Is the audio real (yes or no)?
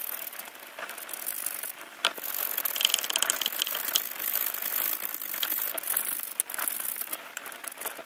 no